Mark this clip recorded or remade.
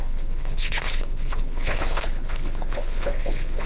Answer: remade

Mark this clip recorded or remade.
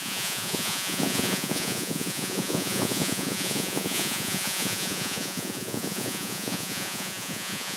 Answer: remade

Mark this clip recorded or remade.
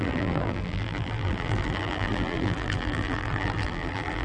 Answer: remade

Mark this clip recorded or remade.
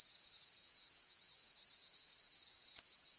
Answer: remade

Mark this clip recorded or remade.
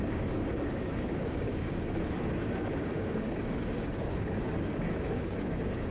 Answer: remade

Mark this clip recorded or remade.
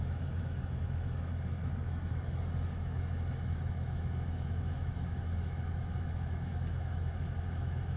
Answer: remade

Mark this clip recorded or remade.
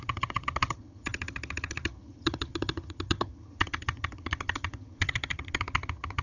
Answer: remade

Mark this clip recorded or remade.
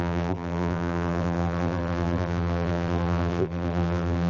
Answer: remade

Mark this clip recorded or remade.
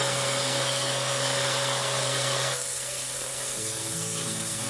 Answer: remade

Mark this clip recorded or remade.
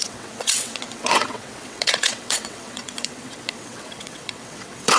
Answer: remade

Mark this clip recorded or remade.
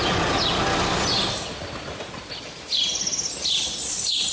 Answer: recorded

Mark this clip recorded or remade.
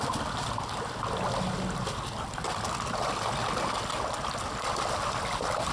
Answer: recorded